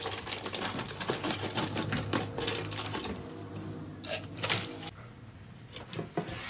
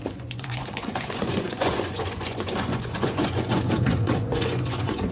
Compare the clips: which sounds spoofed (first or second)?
second